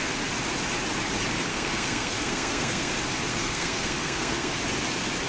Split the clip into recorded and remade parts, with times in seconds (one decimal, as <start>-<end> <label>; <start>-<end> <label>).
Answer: 0.0-1.5 recorded; 1.5-2.9 remade; 2.9-3.3 recorded; 3.3-4.6 remade; 4.6-5.3 recorded